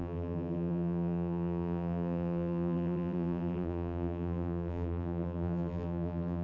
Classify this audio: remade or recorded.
remade